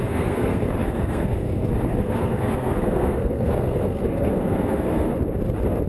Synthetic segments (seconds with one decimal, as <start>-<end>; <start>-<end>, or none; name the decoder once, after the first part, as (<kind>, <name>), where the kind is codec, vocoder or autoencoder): 0.0-5.1 (codec, SNAC)